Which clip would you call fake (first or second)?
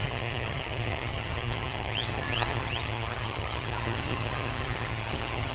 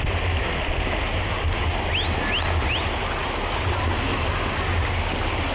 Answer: first